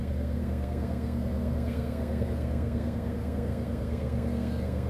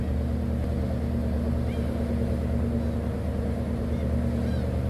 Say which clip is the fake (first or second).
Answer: first